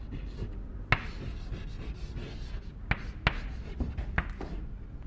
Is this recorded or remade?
recorded